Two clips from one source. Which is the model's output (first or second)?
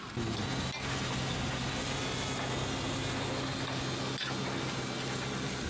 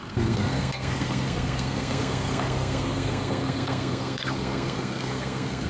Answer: second